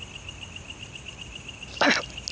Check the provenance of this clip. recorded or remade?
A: recorded